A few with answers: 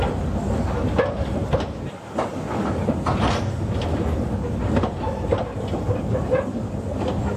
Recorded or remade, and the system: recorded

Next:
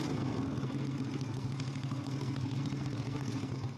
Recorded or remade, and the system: remade, codec, SNAC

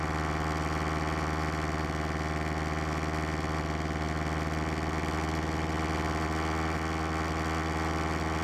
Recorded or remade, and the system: recorded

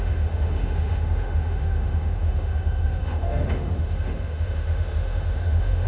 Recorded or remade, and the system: remade, autoencoder, DAC-VAE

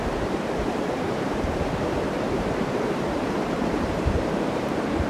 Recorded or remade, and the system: remade, vocoder, BigVGAN v2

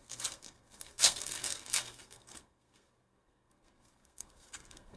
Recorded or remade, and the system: remade, codec, SNAC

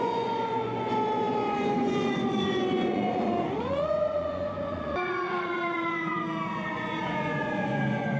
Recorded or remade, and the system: remade, vocoder, Vocos